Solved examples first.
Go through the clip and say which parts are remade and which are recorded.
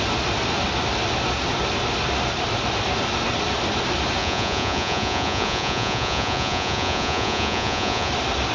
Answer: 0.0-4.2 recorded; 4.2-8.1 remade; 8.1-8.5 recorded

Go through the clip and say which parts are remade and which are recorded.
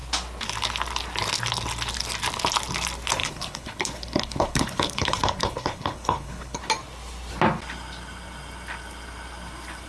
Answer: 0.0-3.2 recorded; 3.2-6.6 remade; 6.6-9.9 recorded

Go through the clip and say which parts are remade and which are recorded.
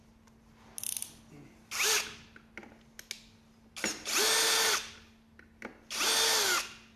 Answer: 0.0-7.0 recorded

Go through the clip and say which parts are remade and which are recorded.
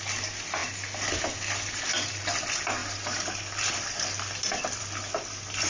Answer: 0.0-5.7 recorded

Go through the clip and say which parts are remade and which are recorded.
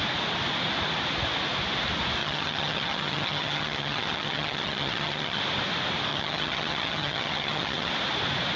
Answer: 0.0-2.2 recorded; 2.2-5.4 remade; 5.4-6.1 recorded; 6.1-7.9 remade; 7.9-8.6 recorded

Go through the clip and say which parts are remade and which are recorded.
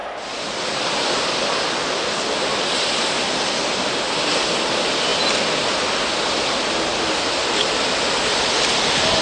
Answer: 0.0-9.2 recorded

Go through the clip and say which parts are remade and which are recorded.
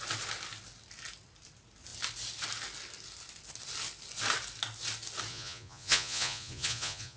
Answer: 0.0-5.3 recorded; 5.3-7.2 remade